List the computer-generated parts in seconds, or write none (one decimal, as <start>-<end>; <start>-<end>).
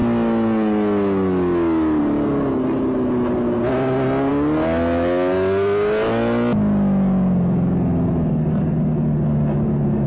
none